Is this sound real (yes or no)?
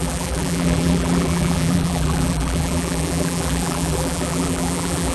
no